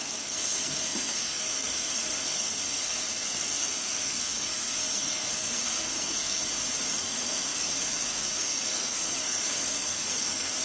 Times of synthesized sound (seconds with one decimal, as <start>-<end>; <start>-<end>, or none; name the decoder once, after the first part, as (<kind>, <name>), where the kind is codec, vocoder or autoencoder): 0.0-6.4 (codec, SNAC); 6.9-10.6